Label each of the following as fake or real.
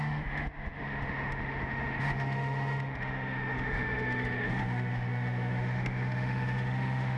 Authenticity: fake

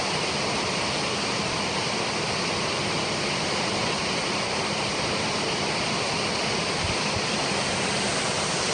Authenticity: real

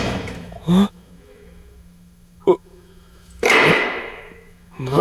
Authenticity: fake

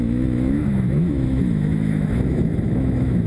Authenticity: fake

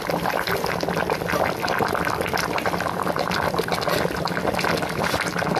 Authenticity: real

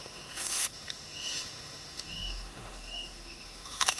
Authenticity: fake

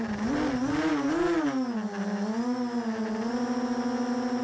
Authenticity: real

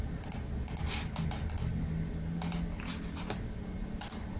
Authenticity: real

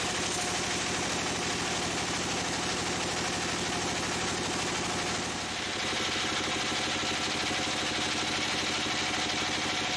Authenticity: real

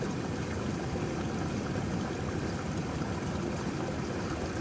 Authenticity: real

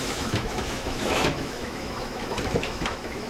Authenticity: fake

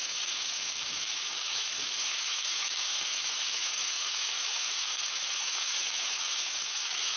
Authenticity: fake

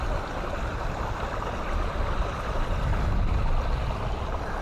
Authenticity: real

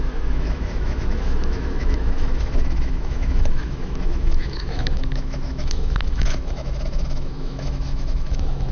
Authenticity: fake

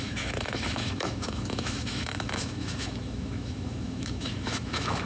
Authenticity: fake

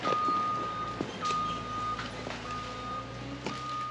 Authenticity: real